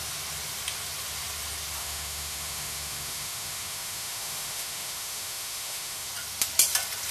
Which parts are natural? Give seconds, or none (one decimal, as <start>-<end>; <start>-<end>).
0.0-1.8; 6.1-7.1